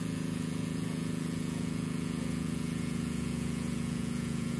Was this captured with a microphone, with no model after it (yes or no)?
no